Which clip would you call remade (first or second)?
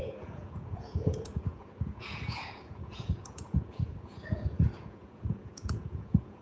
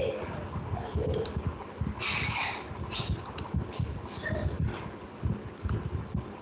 first